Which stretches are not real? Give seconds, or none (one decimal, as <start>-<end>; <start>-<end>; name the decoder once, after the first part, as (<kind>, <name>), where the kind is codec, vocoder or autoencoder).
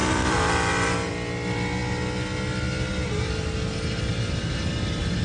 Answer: 0.0-1.1 (vocoder, BigVGAN v2)